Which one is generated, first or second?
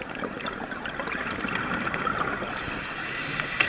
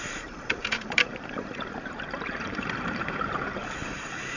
second